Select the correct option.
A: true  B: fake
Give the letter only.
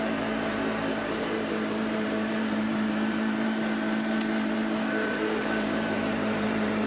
B